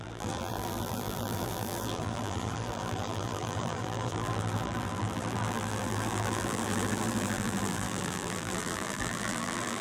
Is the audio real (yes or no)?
no